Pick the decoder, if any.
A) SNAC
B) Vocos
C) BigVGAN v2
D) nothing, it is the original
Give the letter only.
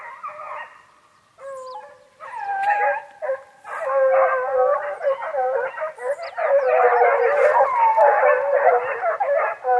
D